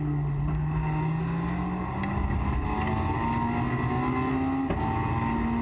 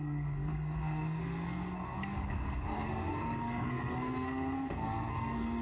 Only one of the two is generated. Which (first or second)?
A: second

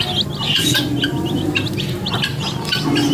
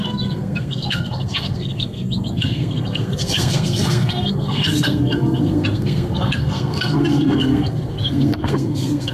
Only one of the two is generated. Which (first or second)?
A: second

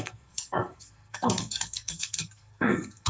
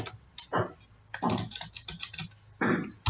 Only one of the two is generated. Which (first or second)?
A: first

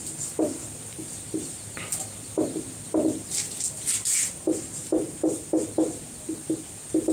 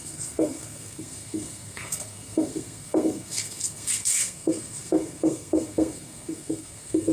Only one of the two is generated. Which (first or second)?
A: second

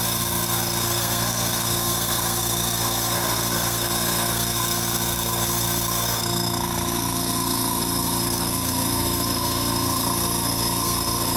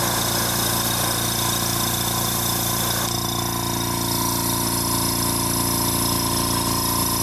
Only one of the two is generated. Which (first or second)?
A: first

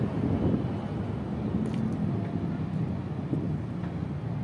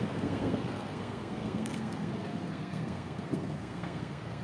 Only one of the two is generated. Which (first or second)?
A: second